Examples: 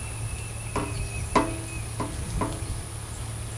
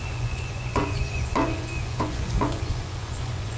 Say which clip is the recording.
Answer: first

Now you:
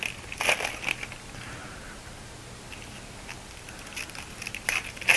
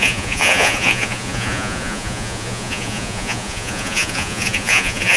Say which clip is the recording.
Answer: first